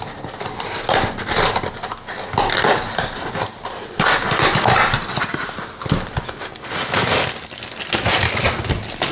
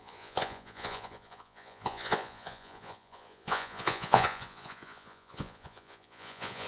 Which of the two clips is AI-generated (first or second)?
second